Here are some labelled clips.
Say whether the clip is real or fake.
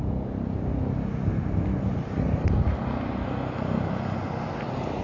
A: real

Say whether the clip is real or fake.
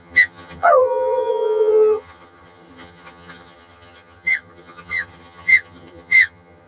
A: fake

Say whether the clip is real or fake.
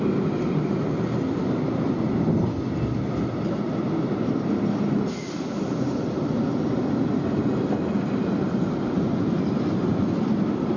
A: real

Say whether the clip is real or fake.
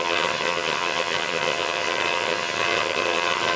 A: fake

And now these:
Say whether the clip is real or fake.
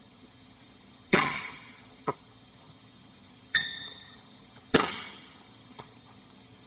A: fake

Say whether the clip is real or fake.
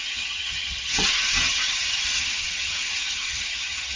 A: fake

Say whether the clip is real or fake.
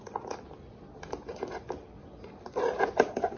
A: real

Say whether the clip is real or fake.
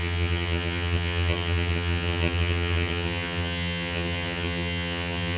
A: fake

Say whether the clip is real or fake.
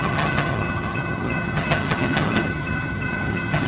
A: fake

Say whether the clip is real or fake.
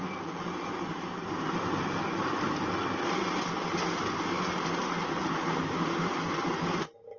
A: real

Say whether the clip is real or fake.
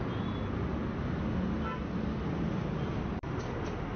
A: real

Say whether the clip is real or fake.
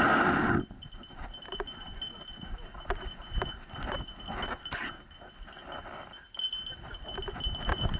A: real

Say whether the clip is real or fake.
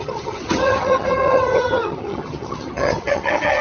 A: fake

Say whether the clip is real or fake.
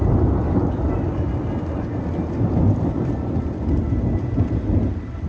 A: real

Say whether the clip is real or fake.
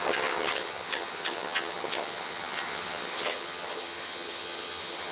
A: fake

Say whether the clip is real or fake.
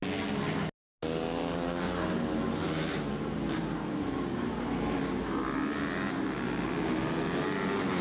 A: real